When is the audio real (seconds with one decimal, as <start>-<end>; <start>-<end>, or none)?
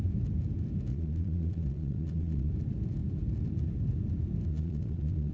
0.0-0.9; 2.5-4.5